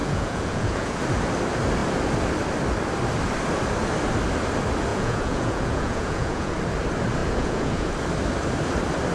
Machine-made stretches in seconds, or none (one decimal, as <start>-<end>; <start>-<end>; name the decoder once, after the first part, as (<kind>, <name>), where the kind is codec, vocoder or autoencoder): 0.0-1.0 (vocoder, Vocos); 4.9-6.5; 7.2-7.9

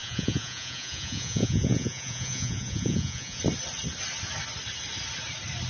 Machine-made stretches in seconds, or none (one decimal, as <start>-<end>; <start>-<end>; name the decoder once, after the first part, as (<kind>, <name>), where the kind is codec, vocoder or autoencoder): 0.0-3.4 (vocoder, Vocos)

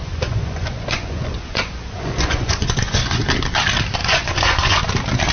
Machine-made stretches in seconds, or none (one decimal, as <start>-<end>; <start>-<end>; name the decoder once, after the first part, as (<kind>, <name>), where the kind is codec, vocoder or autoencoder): 0.0-3.2 (vocoder, Vocos); 4.0-4.8

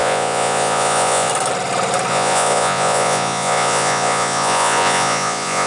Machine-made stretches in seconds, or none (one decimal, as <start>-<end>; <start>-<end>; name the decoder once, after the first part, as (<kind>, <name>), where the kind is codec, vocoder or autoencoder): 0.0-1.3 (vocoder, Vocos); 2.1-5.7

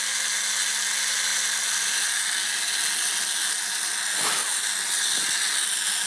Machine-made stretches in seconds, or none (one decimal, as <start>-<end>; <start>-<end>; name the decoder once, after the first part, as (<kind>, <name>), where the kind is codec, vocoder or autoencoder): none